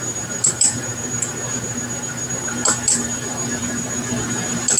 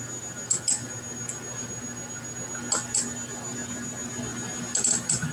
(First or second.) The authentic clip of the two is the second